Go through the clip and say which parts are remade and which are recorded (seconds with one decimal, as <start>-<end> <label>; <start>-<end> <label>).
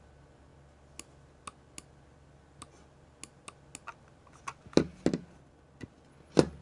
0.0-6.6 recorded